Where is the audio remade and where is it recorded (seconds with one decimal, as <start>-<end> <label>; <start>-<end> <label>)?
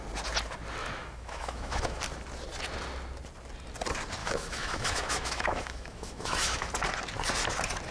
0.0-0.8 recorded; 0.8-2.0 remade; 2.0-4.2 recorded; 4.2-6.7 remade; 6.7-7.9 recorded